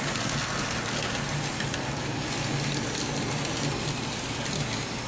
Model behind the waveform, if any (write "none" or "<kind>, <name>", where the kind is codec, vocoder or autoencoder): none